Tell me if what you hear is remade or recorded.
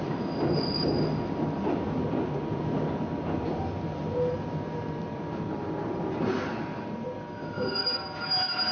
recorded